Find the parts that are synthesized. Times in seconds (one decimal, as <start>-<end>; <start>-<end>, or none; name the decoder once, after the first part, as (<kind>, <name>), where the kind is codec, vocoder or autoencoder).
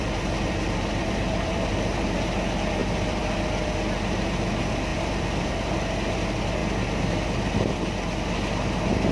0.0-1.7 (vocoder, BigVGAN v2); 2.8-3.7; 4.9-5.5